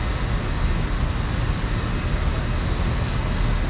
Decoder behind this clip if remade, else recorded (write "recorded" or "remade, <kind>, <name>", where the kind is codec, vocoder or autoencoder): recorded